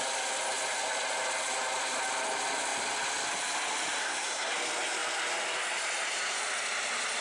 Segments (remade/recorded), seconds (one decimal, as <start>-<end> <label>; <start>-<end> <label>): 0.0-4.0 recorded; 4.0-4.5 remade; 4.5-7.2 recorded